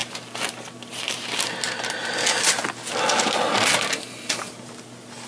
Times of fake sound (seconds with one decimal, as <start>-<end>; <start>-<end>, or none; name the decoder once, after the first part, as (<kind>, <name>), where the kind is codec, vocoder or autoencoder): none